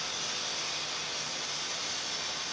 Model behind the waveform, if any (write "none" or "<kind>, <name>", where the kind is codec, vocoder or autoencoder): none